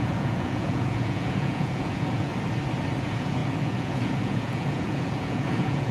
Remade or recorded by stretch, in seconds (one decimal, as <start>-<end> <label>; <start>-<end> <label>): 0.0-2.3 remade; 2.3-3.0 recorded; 3.0-5.9 remade